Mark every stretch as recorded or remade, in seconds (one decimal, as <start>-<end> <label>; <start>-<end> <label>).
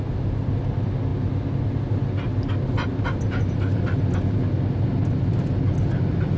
0.0-6.4 recorded